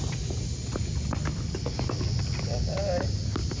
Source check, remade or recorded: recorded